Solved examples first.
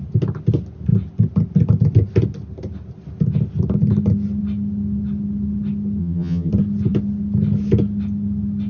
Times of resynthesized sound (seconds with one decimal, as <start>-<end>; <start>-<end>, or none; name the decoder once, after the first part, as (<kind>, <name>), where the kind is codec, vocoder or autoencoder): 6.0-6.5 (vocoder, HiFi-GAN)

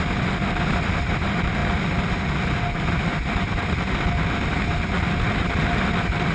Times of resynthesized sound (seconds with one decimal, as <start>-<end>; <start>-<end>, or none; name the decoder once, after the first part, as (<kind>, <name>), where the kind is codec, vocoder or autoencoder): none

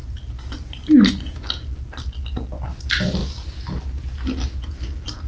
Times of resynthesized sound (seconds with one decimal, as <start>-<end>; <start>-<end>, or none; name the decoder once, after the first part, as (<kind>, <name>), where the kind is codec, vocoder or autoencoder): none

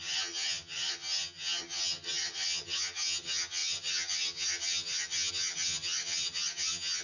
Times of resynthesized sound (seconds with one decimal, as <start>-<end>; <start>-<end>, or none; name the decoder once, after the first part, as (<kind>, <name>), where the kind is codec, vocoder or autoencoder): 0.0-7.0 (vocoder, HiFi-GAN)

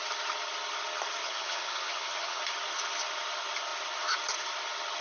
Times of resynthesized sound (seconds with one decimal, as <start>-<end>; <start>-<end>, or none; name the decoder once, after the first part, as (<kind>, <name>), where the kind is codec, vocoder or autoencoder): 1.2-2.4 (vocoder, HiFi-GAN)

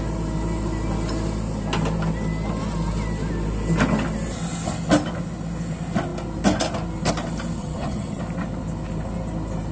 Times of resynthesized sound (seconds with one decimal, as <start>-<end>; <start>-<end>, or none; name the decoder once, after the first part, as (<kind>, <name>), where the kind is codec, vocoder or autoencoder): 7.6-8.2 (vocoder, HiFi-GAN)

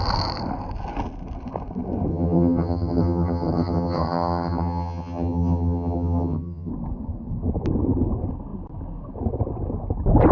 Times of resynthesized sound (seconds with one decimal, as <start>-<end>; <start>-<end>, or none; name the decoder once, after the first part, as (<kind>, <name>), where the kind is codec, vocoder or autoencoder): 2.1-6.7 (vocoder, HiFi-GAN)